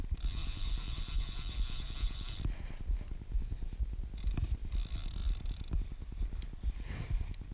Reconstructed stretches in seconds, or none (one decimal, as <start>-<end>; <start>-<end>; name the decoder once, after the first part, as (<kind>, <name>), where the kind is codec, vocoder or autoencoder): 0.4-2.3 (vocoder, BigVGAN v2); 5.2-6.7